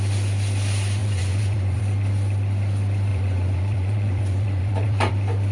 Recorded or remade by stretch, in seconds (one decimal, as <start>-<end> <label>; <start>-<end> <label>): 0.0-1.0 recorded; 1.0-1.8 remade; 1.8-3.1 recorded; 3.1-5.1 remade; 5.1-5.5 recorded